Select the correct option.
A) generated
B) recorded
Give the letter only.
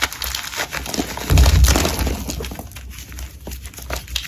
B